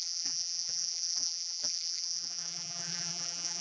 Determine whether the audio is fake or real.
fake